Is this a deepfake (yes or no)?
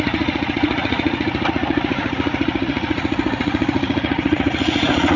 yes